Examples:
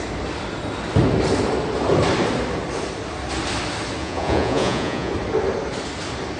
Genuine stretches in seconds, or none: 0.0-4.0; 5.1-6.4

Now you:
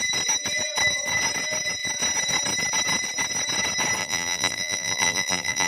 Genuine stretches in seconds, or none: 0.0-4.0